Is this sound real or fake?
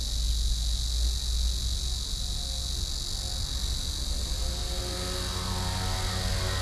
real